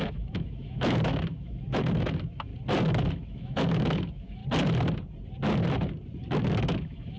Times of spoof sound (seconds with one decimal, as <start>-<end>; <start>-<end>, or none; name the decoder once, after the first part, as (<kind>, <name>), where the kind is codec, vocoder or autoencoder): 0.0-2.5 (autoencoder, DAC-VAE); 3.1-4.4; 6.3-7.2